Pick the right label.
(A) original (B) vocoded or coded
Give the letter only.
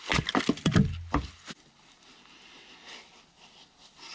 A